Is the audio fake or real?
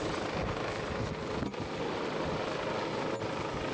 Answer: real